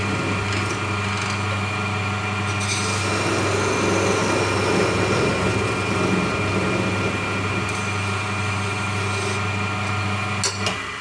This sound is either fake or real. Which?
real